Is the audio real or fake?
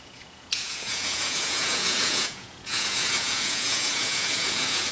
fake